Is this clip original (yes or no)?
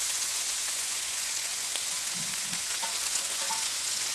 no